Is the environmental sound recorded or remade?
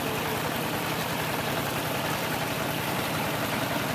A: remade